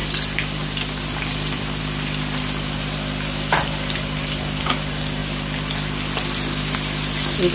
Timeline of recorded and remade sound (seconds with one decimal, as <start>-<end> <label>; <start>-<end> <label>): 0.0-1.8 remade; 1.8-7.5 recorded